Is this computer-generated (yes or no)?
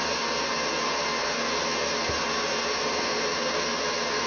no